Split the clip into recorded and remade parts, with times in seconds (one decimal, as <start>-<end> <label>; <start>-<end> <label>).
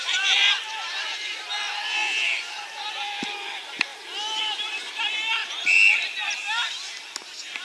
0.0-3.9 remade; 3.9-4.4 recorded; 4.4-5.4 remade; 5.4-7.6 recorded